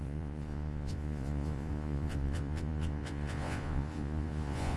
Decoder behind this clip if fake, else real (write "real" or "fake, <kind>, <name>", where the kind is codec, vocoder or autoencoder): fake, vocoder, Vocos